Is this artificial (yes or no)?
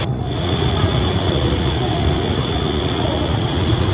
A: yes